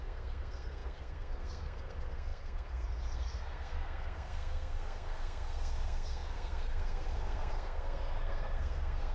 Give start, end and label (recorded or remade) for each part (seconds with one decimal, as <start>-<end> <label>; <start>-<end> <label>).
0.0-9.1 remade